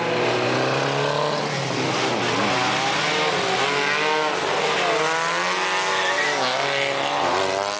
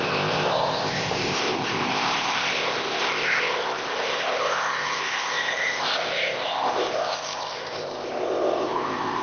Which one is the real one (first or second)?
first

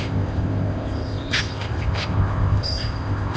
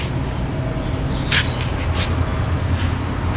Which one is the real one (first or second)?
second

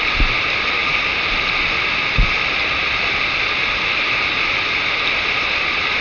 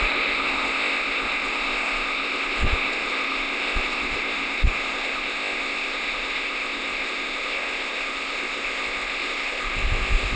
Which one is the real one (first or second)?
first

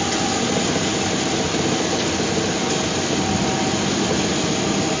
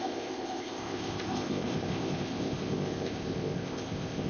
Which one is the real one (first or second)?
first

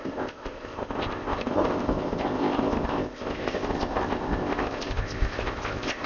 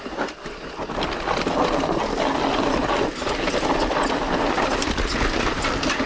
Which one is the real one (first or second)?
second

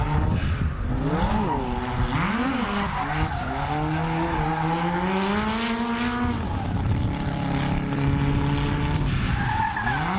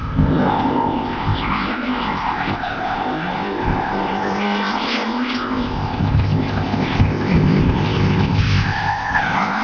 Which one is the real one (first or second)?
first